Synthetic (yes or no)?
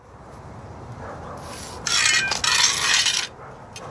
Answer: no